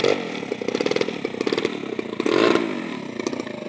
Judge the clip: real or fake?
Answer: real